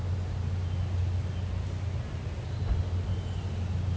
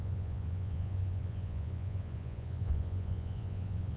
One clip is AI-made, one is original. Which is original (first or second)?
first